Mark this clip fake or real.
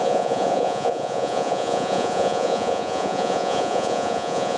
fake